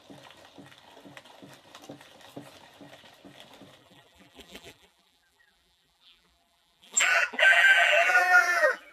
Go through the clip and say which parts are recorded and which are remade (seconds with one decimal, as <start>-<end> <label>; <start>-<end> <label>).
0.0-3.8 recorded; 3.8-8.9 remade